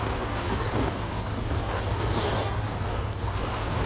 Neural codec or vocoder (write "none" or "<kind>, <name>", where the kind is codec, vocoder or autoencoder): codec, DAC